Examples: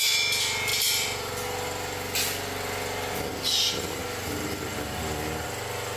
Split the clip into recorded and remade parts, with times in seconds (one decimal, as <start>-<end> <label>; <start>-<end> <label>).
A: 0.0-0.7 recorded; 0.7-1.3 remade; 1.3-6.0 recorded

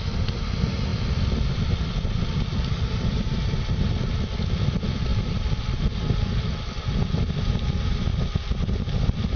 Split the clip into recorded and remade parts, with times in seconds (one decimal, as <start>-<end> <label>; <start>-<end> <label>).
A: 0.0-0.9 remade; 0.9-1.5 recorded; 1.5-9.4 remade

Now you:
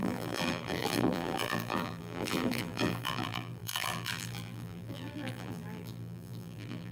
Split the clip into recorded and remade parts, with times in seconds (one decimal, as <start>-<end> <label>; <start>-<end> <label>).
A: 0.0-6.9 remade